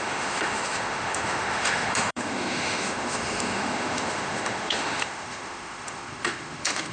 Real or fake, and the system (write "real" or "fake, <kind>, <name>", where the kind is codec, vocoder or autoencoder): fake, autoencoder, DAC-VAE